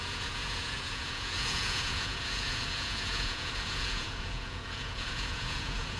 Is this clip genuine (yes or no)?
no